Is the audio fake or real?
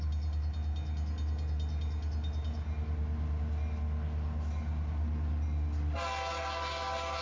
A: real